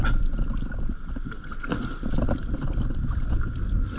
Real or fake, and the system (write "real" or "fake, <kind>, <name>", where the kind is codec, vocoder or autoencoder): real